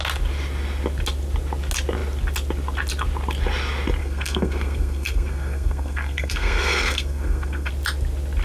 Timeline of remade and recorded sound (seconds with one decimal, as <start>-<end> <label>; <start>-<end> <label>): 0.0-4.0 recorded; 4.0-7.7 remade; 7.7-8.4 recorded